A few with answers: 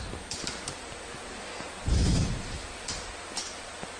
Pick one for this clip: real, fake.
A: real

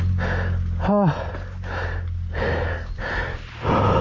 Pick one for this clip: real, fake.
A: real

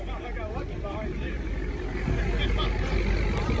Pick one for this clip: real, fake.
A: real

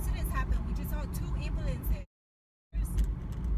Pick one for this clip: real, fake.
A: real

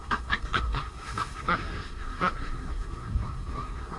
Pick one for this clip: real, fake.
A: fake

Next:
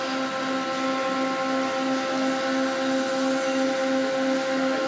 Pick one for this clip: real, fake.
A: real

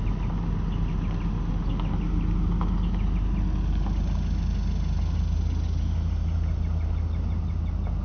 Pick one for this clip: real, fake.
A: real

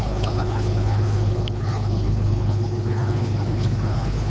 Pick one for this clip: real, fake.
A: fake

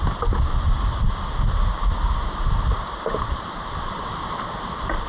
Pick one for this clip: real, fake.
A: real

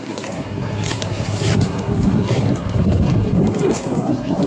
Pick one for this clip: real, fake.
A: fake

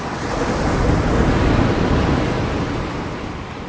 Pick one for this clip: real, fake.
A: real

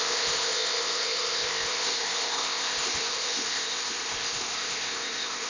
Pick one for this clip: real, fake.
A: fake